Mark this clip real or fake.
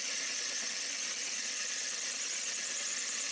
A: fake